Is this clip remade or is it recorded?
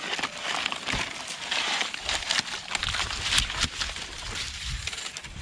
recorded